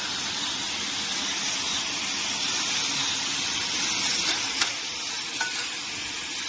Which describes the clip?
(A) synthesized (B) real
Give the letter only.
B